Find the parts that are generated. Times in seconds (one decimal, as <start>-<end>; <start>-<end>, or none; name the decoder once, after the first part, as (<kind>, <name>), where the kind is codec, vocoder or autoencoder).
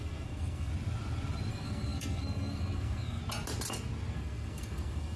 0.0-0.7 (codec, SNAC); 1.5-3.2; 4.1-5.2